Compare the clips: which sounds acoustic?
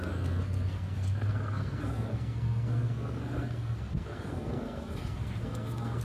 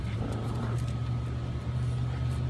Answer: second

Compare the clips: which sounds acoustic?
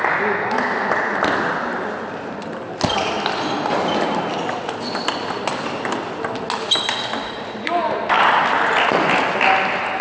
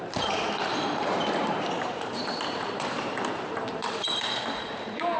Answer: first